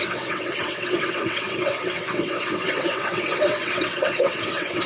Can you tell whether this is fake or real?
fake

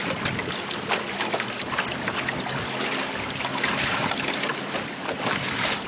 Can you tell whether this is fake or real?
real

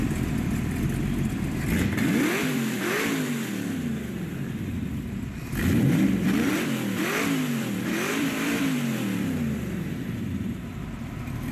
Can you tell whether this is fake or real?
fake